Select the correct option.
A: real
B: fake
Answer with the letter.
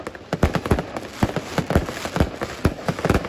A